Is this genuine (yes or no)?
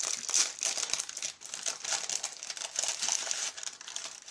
yes